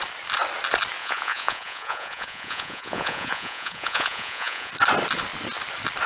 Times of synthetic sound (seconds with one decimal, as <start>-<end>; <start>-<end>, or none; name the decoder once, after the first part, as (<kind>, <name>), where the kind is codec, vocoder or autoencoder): 1.0-4.7 (vocoder, Vocos)